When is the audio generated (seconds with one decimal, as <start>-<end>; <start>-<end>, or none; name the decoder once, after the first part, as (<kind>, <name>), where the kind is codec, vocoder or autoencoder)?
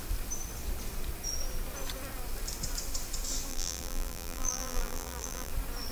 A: 3.5-5.5 (vocoder, BigVGAN v2)